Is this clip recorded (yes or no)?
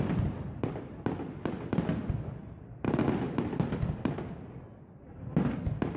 yes